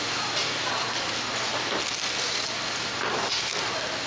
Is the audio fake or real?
real